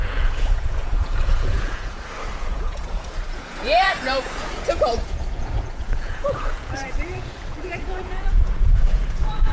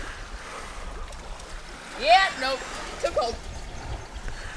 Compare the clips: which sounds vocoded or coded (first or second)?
first